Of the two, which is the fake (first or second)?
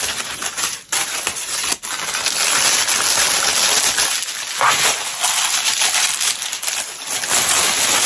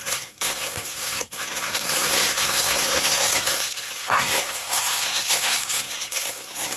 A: second